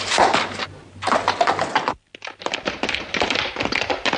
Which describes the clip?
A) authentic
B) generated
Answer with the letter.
A